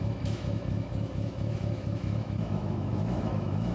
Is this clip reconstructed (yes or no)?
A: yes